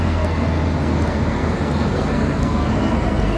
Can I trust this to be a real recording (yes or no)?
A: no